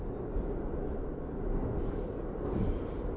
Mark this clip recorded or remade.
recorded